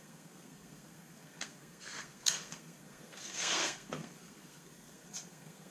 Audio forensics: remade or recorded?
remade